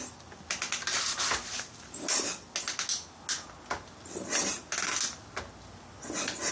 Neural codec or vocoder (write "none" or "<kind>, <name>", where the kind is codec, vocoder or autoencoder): none